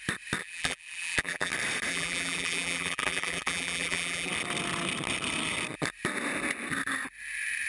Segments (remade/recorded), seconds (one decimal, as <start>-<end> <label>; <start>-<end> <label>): 0.0-0.4 recorded; 0.4-1.5 remade; 1.5-1.9 recorded; 1.9-4.3 remade; 4.3-7.7 recorded